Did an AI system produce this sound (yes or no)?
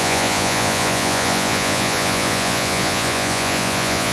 yes